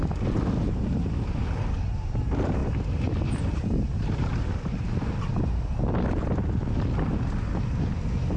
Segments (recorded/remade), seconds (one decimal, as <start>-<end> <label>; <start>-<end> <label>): 0.0-2.6 recorded; 2.6-3.2 remade; 3.2-8.4 recorded